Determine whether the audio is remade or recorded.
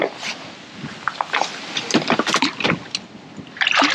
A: recorded